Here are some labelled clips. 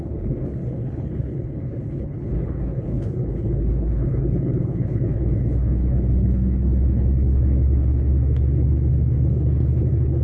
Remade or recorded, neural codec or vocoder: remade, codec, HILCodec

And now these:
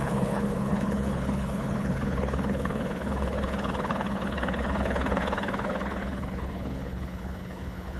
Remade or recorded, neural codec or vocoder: remade, codec, HILCodec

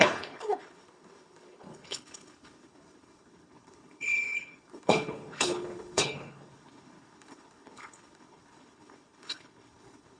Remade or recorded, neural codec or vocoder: remade, codec, HILCodec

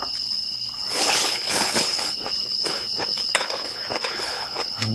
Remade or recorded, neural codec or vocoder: remade, codec, HILCodec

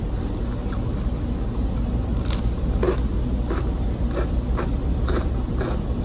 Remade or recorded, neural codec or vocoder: recorded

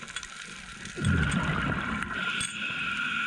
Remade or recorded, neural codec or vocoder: recorded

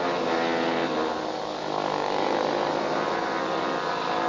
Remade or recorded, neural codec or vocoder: recorded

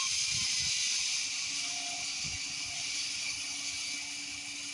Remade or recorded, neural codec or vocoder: recorded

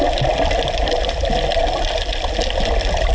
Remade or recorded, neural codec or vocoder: recorded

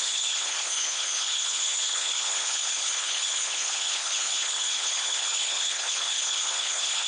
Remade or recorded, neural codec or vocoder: remade, codec, HILCodec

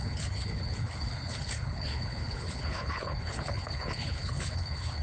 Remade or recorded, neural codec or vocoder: remade, codec, HILCodec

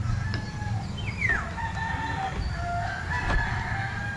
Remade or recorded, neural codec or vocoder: recorded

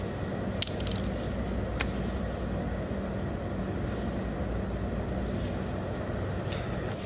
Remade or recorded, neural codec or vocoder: recorded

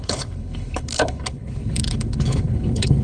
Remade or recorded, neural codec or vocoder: remade, codec, HILCodec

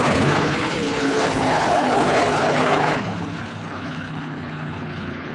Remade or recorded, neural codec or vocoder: remade, codec, HILCodec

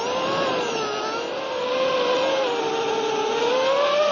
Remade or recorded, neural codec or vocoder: recorded